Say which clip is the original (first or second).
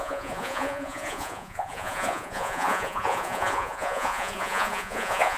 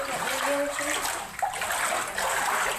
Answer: second